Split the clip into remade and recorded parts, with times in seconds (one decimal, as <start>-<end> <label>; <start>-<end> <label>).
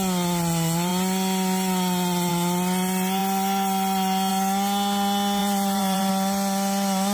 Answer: 0.0-5.4 recorded; 5.4-6.1 remade; 6.1-7.1 recorded